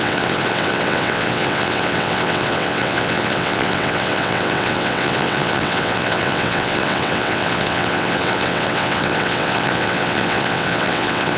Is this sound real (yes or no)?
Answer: no